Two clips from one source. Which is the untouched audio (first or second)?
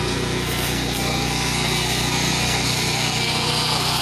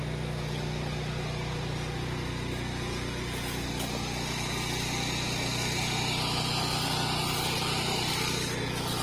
second